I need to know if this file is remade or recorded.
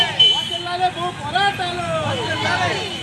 recorded